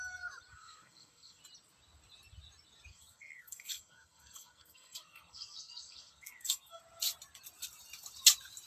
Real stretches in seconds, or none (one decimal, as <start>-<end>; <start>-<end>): 0.0-0.5; 1.4-2.9; 6.8-8.7